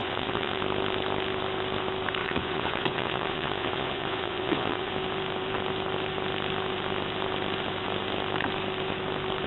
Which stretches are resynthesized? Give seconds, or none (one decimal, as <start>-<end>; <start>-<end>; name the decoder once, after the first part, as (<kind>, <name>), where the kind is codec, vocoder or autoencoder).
0.0-0.6 (vocoder, Vocos); 2.2-4.9